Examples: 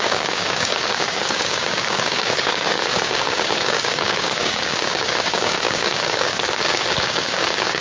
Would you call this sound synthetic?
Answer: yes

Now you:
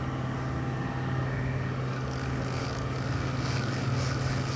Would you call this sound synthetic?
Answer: yes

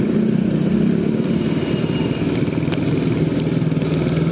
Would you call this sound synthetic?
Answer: no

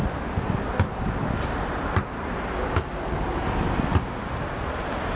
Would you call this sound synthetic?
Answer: no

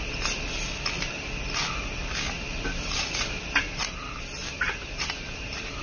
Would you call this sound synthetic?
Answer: no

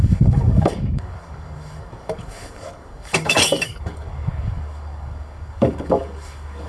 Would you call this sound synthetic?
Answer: yes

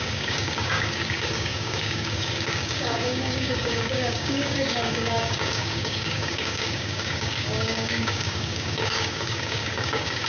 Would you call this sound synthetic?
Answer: yes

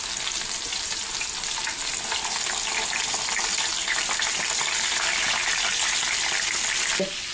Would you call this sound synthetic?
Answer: no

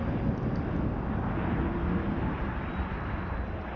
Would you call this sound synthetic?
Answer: no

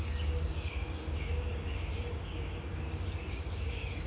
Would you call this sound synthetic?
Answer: yes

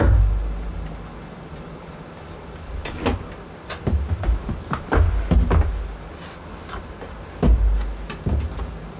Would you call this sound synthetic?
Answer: no